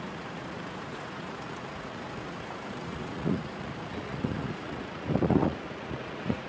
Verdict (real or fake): fake